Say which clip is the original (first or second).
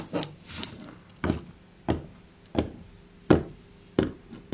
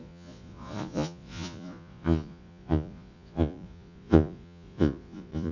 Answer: first